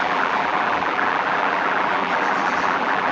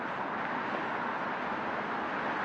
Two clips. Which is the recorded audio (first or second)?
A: second